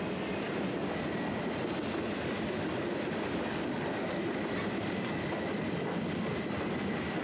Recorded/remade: recorded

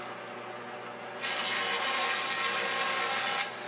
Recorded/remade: recorded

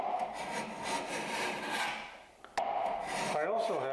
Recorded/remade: recorded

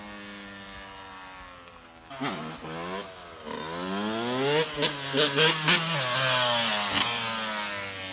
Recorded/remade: recorded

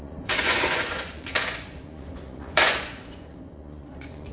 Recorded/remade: remade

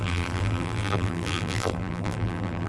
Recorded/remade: remade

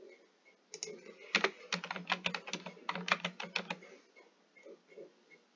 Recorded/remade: recorded